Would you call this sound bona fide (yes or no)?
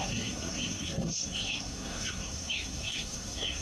no